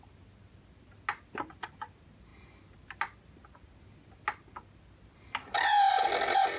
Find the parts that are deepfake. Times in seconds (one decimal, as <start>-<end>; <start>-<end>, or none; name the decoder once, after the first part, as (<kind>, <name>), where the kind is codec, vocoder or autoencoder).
none